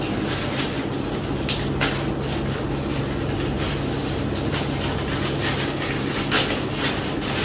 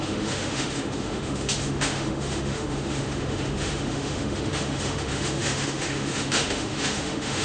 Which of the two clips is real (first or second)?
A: first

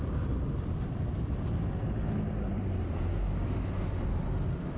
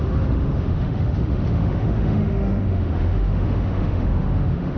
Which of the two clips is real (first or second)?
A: first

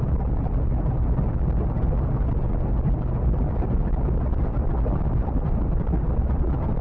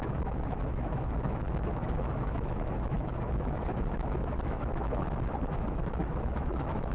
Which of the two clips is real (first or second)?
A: first